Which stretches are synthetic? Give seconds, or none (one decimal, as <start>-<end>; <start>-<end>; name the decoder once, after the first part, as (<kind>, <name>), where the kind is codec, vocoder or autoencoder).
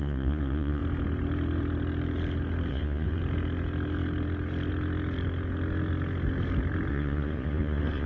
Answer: 0.0-0.8 (vocoder, Vocos); 2.7-3.2; 6.9-8.1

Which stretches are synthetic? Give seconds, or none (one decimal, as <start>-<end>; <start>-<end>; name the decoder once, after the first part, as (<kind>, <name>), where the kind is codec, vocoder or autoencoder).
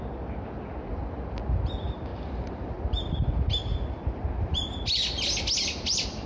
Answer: none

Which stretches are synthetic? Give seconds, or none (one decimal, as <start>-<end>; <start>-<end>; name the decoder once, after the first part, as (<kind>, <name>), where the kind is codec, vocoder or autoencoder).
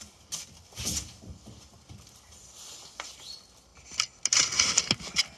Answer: none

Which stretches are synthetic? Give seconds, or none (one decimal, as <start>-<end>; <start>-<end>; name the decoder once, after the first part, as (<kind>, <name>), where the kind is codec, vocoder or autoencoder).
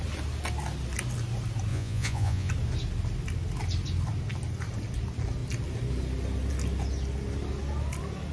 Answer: 1.7-2.5 (vocoder, Vocos)